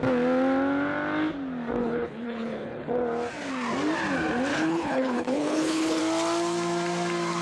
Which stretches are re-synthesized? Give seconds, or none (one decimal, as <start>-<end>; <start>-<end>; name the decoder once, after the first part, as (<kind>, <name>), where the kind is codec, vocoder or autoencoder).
1.8-2.9 (codec, HILCodec); 4.5-6.0